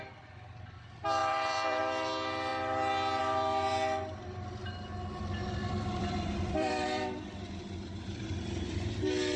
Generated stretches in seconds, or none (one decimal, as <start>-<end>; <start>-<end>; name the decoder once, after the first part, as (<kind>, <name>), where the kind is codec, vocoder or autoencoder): 1.2-1.8 (vocoder, BigVGAN v2); 5.6-8.4

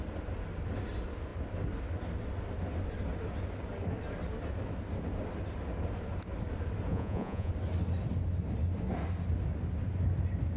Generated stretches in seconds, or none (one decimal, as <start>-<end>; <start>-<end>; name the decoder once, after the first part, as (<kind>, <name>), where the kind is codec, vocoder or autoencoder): 6.9-7.5 (vocoder, Vocos)